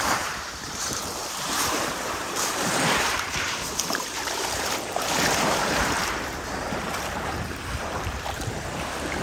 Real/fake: fake